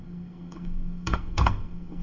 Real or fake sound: fake